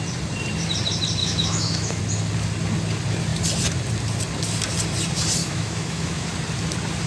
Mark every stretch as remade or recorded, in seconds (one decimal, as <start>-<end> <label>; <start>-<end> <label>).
0.0-1.2 recorded; 1.2-2.0 remade; 2.0-5.4 recorded; 5.4-6.3 remade; 6.3-7.1 recorded